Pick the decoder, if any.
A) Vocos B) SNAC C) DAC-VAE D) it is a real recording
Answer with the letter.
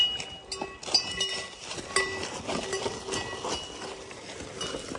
D